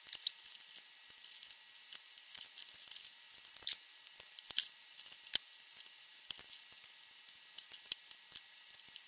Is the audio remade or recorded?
recorded